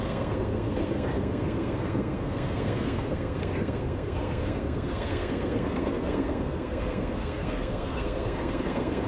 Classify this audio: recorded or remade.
remade